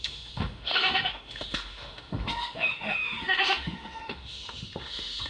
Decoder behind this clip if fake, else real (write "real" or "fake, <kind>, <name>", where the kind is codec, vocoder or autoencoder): fake, autoencoder, DAC-VAE